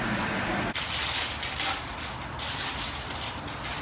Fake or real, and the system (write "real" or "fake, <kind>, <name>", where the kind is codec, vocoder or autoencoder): real